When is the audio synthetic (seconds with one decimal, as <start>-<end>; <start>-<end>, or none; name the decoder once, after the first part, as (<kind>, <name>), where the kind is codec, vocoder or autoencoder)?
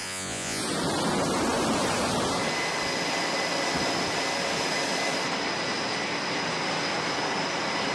0.0-0.6 (vocoder, Vocos)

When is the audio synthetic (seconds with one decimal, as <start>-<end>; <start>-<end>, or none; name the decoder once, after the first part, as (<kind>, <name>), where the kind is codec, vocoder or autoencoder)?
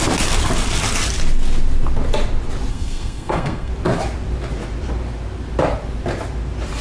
2.7-3.7 (codec, SNAC)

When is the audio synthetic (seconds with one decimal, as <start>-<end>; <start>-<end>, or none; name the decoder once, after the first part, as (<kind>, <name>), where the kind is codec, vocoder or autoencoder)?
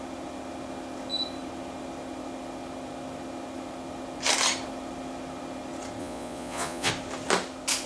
6.0-6.9 (vocoder, Vocos)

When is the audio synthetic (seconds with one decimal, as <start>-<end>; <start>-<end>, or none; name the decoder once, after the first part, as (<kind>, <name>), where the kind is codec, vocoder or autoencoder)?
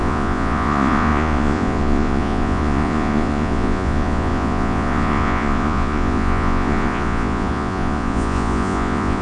0.0-9.2 (vocoder, Vocos)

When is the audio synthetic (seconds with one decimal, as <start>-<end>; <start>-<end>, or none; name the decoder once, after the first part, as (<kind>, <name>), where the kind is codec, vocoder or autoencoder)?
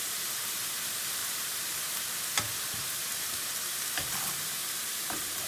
0.0-5.5 (vocoder, BigVGAN v2)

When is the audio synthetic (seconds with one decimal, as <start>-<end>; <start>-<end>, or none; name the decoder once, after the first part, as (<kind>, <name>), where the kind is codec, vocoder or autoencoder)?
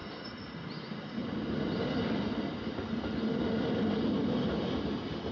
none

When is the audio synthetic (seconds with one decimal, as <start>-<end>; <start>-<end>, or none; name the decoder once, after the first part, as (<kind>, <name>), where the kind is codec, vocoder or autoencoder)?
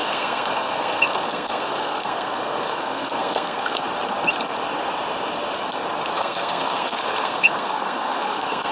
0.0-3.9 (codec, SNAC); 6.2-8.7